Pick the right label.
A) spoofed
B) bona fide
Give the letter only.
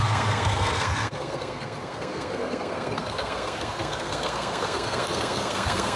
A